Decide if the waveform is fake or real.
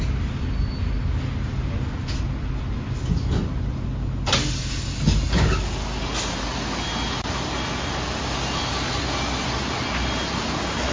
real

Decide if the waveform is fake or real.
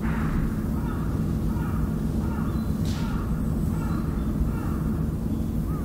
real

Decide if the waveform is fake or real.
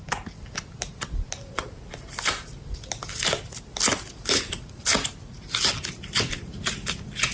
real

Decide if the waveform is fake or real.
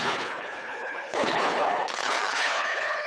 fake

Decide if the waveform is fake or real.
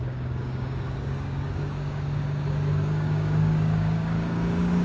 fake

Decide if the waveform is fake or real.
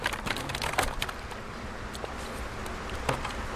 real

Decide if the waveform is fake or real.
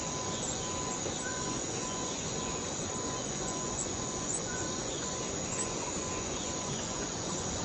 fake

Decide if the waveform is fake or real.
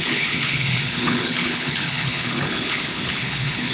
fake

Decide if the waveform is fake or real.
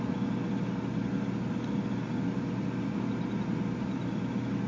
real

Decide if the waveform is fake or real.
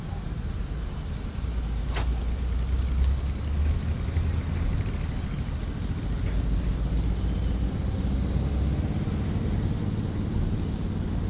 real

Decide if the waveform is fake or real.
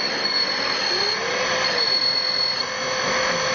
real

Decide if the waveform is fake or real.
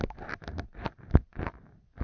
real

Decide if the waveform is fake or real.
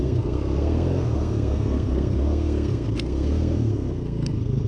fake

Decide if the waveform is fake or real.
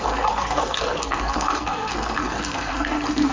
fake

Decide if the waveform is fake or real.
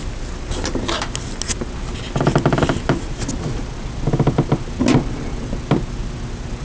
real